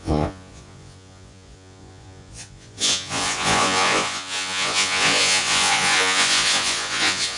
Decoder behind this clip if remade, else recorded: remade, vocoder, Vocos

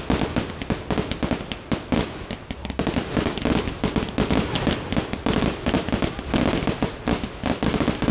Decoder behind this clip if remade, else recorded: recorded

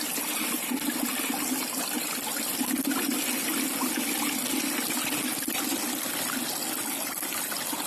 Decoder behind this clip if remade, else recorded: recorded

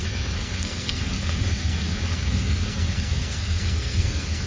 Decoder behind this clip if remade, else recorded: remade, codec, SNAC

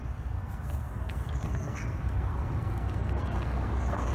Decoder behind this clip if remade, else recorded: remade, codec, SNAC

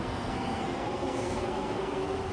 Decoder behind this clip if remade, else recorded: remade, codec, SNAC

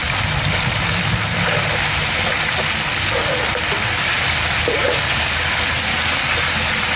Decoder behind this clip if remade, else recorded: recorded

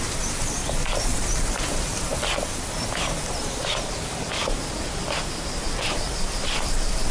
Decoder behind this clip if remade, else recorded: remade, vocoder, BigVGAN v2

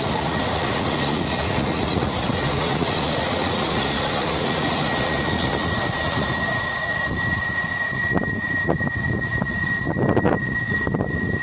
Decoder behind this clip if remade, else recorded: remade, vocoder, Vocos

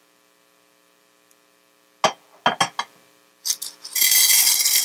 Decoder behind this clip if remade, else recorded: recorded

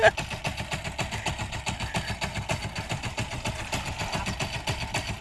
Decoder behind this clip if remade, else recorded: recorded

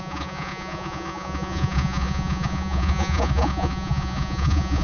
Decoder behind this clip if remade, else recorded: remade, vocoder, Vocos